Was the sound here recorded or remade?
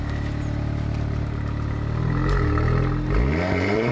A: recorded